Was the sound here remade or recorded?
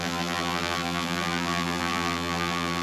remade